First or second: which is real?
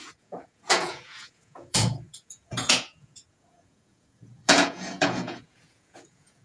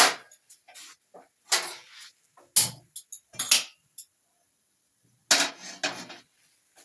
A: second